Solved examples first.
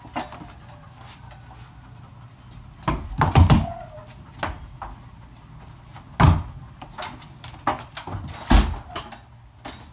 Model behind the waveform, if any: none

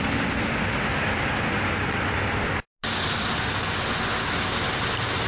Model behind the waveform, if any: none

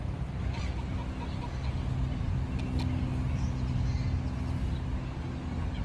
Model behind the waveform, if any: none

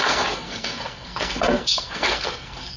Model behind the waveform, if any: codec, SNAC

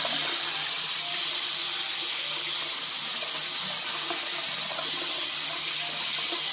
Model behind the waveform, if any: none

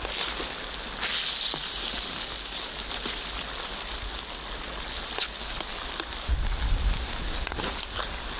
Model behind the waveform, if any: none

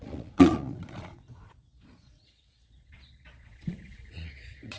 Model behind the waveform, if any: vocoder, Vocos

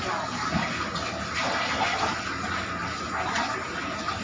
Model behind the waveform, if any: none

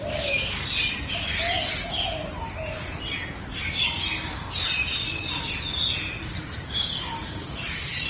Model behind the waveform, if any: none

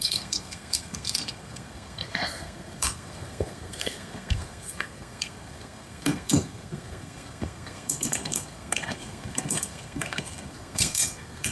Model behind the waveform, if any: codec, SNAC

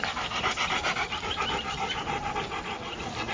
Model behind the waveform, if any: none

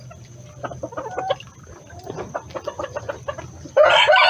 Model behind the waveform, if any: none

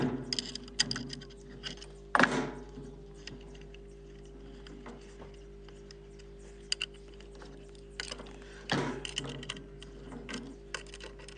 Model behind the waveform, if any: none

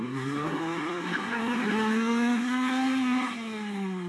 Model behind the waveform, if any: codec, SNAC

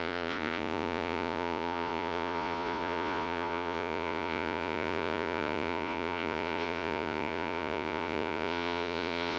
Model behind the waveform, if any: vocoder, Vocos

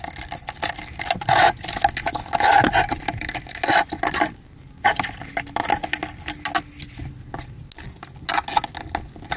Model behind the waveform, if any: none